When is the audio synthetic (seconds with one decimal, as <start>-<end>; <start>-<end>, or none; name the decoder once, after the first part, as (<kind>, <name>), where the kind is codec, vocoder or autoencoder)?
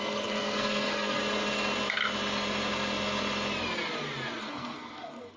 0.0-1.2 (codec, SNAC); 4.4-5.4